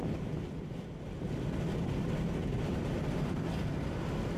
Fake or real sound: real